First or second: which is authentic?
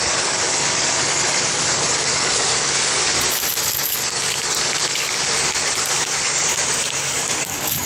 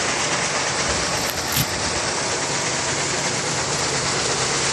second